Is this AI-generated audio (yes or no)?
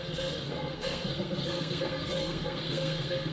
yes